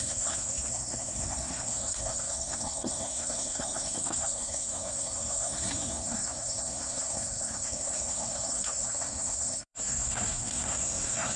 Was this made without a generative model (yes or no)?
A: no